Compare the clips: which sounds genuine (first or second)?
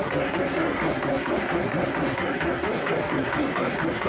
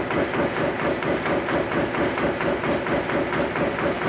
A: second